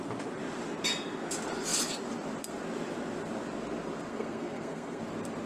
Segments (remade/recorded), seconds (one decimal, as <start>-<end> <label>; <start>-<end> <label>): 0.0-4.1 recorded; 4.1-5.0 remade; 5.0-5.5 recorded